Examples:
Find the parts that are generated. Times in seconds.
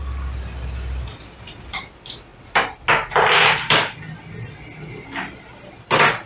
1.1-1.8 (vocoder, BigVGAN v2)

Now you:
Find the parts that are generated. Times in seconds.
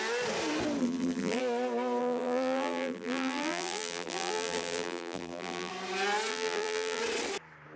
0.8-1.4 (vocoder, BigVGAN v2); 2.0-5.7; 6.3-7.0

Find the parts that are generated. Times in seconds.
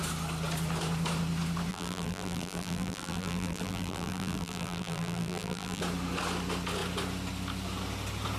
1.7-5.8 (vocoder, BigVGAN v2)